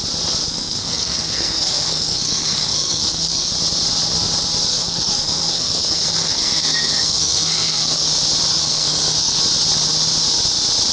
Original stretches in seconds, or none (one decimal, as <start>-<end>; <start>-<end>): 0.0-0.4; 3.5-4.7; 8.1-8.5; 9.4-10.9